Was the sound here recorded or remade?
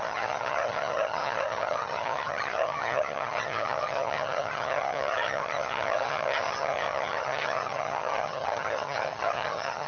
remade